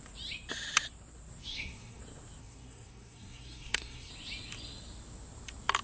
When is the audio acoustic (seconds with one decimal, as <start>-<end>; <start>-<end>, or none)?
0.0-1.4; 2.0-2.4; 4.1-5.8